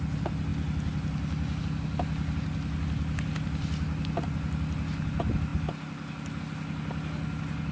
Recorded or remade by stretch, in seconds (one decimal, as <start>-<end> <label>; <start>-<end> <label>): 0.0-7.7 recorded

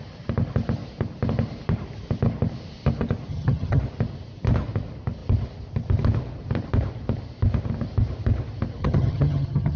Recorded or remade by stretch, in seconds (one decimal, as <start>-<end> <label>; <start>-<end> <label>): 0.0-3.3 recorded; 3.3-3.8 remade; 3.8-8.8 recorded; 8.8-9.8 remade

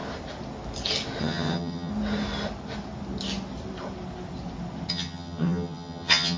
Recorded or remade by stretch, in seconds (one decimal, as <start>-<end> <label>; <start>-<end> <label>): 0.0-1.2 recorded; 1.2-1.9 remade; 1.9-4.9 recorded; 4.9-6.4 remade

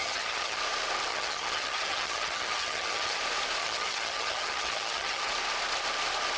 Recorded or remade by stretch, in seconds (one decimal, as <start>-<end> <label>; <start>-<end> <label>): 0.0-0.6 remade; 0.6-1.1 recorded; 1.1-3.2 remade; 3.2-3.6 recorded; 3.6-5.3 remade; 5.3-6.4 recorded

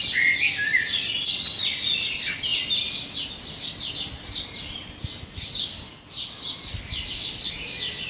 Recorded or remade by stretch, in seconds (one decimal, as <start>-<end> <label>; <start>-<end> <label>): 0.0-8.1 recorded